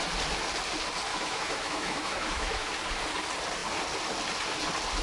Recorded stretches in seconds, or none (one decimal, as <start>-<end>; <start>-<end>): 0.0-1.1; 2.7-5.0